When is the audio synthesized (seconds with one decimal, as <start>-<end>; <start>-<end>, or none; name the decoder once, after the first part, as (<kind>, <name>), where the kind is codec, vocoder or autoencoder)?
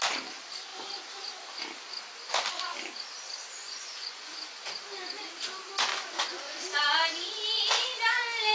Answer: 3.6-4.7 (vocoder, Vocos); 5.9-6.8